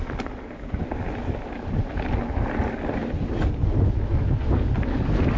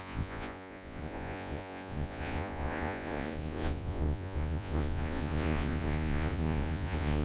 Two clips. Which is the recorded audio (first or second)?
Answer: first